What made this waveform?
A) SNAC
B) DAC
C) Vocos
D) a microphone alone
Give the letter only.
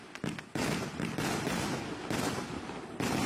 D